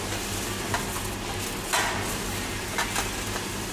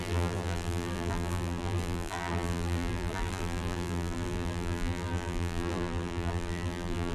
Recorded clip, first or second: first